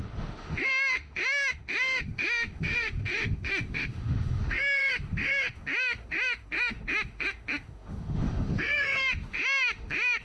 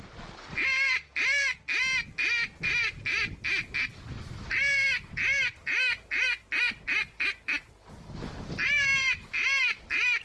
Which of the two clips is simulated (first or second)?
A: first